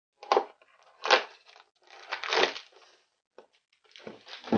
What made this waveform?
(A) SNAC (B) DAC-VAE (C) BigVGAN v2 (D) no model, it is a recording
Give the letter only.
D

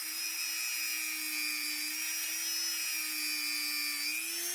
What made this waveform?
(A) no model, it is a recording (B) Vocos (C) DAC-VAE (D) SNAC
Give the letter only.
A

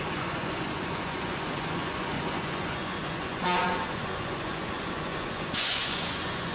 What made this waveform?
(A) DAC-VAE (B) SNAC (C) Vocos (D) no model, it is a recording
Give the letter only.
C